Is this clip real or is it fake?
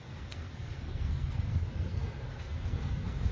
fake